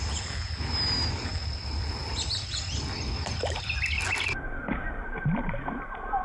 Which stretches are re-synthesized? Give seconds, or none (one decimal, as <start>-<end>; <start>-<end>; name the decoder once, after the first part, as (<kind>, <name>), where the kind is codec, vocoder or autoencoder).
none